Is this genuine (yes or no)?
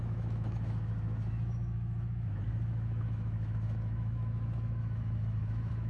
no